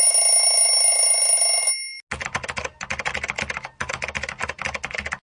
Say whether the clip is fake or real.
real